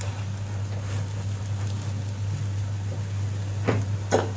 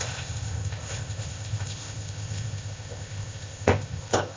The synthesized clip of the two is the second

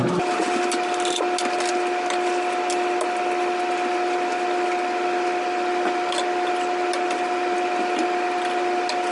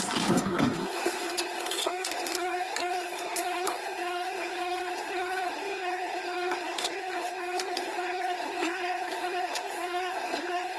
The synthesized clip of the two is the second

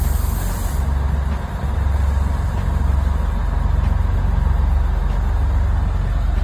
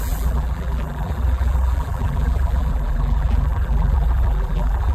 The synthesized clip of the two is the second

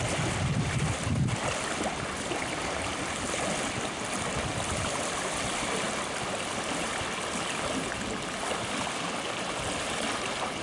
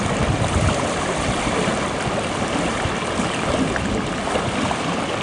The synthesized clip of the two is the second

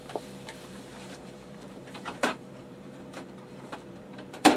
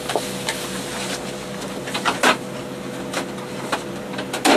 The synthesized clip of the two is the first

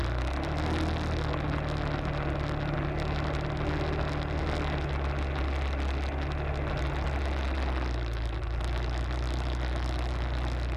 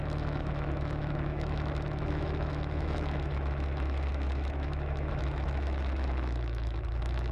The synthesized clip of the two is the second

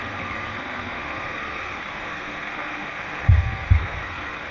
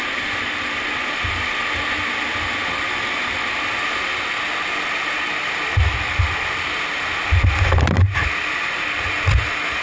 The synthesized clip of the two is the first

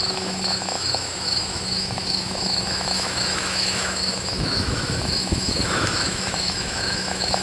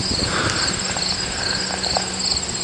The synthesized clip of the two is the first